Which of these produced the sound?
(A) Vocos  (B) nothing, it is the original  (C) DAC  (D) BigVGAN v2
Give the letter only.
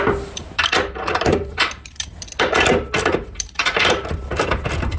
B